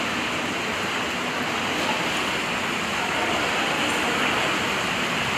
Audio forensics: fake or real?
real